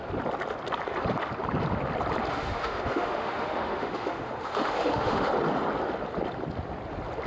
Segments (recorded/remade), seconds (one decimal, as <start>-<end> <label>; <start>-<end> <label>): 0.0-2.3 recorded; 2.3-5.3 remade; 5.3-7.3 recorded

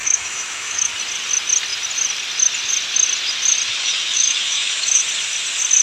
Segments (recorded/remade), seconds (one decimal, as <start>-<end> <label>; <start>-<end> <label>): 0.0-0.9 remade; 0.9-3.7 recorded; 3.7-5.0 remade; 5.0-5.8 recorded

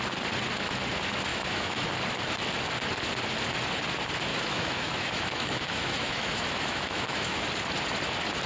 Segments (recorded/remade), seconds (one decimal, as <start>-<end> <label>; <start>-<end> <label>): 0.0-1.3 recorded; 1.3-1.9 remade; 1.9-4.3 recorded; 4.3-7.4 remade; 7.4-8.5 recorded